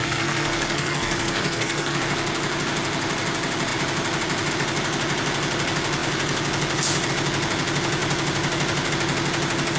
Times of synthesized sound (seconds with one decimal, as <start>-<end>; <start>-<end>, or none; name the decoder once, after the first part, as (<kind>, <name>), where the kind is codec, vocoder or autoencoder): 0.0-2.0 (codec, SNAC)